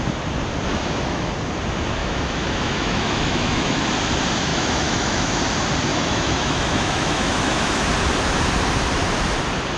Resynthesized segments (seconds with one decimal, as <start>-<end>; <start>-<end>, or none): 0.7-1.3; 2.0-3.8; 4.5-5.4; 5.9-7.9